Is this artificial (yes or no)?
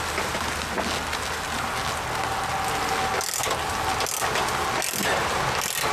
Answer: no